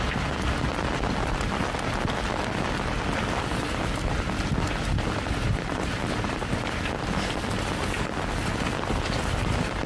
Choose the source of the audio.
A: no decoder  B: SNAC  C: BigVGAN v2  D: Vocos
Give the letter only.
A